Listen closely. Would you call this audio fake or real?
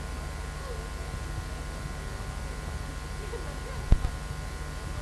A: real